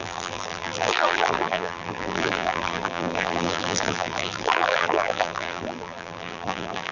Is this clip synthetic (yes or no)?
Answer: yes